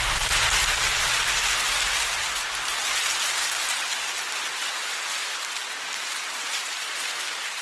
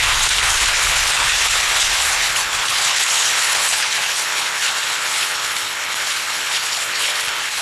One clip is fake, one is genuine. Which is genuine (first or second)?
first